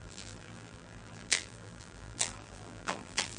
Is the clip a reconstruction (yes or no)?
yes